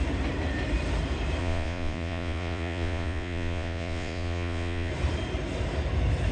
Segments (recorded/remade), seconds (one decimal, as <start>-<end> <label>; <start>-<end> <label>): 0.0-1.4 recorded; 1.4-4.9 remade; 4.9-6.3 recorded